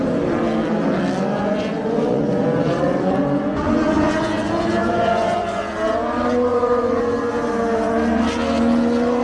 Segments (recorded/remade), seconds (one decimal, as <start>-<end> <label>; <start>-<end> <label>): 0.0-1.3 recorded; 1.3-5.6 remade; 5.6-6.5 recorded; 6.5-7.0 remade; 7.0-9.2 recorded